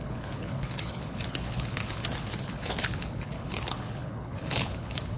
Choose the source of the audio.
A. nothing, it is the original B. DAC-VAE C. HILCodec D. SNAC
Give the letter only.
C